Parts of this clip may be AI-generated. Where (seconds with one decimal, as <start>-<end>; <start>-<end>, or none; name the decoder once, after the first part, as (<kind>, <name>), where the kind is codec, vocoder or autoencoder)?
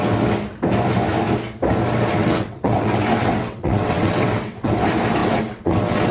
2.2-4.7 (vocoder, WaveNeXt); 5.2-6.1